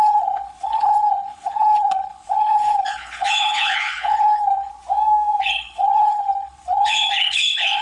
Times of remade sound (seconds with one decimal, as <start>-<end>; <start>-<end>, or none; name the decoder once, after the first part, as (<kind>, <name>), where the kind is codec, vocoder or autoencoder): 0.0-4.7 (codec, HILCodec); 5.4-7.8